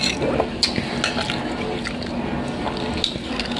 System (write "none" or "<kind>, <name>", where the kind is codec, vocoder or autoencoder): none